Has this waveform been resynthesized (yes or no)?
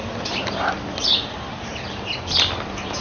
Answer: no